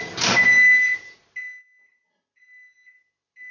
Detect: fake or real real